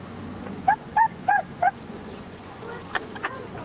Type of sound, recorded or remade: remade